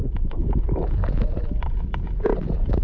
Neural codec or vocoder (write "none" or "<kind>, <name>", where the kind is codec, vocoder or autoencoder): none